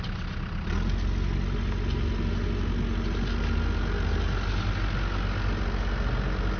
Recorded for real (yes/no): yes